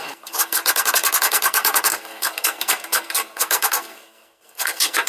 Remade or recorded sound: remade